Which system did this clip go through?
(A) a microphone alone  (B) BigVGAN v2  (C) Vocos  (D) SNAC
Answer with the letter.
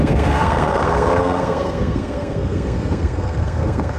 D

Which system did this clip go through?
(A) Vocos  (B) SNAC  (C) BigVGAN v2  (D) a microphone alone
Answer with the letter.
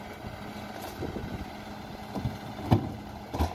D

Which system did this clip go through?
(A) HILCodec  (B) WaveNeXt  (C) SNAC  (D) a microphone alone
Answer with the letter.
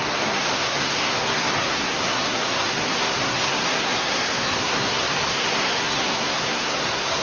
C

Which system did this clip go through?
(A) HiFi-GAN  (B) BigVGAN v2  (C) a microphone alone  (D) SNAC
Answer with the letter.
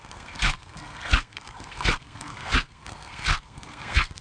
D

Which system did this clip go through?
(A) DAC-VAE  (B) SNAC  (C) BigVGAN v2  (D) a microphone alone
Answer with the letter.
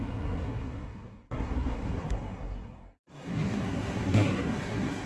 B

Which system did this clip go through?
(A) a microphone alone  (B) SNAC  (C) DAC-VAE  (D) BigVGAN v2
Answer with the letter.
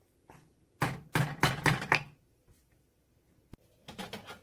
A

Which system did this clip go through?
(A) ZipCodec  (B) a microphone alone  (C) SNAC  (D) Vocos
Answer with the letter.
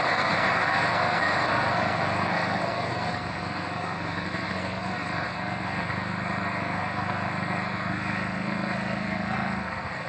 C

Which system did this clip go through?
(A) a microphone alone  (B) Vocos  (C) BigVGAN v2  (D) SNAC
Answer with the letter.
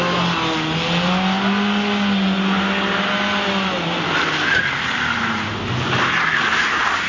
A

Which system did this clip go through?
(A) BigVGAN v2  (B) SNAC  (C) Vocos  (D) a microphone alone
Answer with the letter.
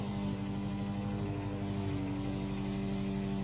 D